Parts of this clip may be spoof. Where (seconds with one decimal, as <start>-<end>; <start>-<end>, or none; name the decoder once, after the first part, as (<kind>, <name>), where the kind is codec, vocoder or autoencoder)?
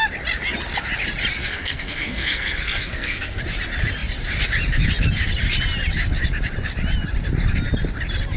1.4-3.4 (codec, SNAC)